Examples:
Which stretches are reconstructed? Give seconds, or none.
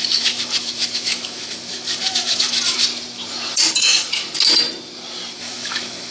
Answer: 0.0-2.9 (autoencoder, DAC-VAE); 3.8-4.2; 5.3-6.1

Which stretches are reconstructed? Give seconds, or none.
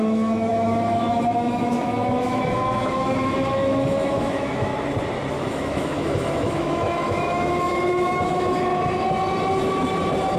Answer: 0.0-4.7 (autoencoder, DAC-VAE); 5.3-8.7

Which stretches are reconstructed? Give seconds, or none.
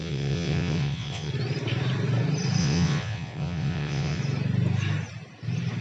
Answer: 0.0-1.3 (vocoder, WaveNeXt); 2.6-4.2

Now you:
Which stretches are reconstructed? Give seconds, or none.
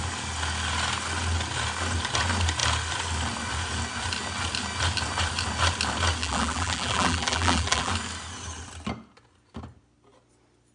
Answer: 6.2-7.9 (vocoder, BigVGAN v2)